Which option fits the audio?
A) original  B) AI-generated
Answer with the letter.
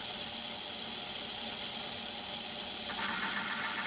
A